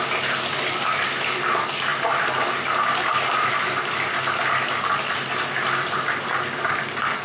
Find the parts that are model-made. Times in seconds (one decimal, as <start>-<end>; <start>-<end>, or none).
none